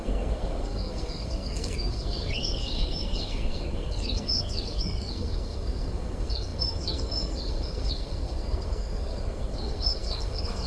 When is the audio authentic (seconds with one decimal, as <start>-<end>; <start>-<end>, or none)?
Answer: none